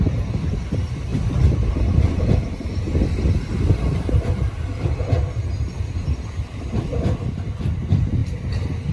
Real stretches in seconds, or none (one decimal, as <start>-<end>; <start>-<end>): none

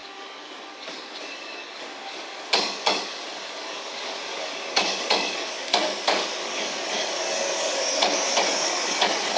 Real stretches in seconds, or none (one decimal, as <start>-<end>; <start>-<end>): none

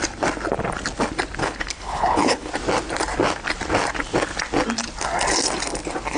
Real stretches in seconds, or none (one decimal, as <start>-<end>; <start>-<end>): 0.0-1.4; 2.5-6.2

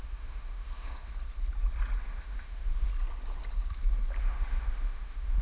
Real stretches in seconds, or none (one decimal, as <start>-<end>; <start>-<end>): 1.1-2.0; 2.9-4.2

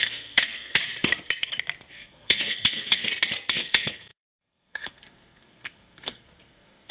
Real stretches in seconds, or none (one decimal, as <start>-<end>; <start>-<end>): 0.8-1.9; 3.0-3.5

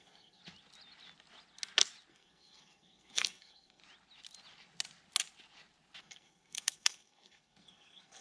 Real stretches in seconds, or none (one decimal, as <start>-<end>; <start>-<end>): 0.4-2.1; 3.8-6.0